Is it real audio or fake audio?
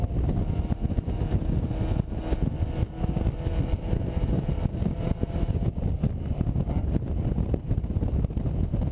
real